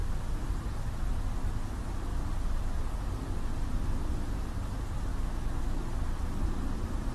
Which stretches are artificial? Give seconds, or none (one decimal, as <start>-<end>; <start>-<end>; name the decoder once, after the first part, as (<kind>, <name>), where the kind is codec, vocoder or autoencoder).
5.1-5.8 (autoencoder, DAC-VAE)